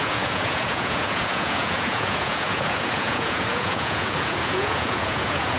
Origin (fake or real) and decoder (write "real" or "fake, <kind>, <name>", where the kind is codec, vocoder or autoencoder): fake, vocoder, Vocos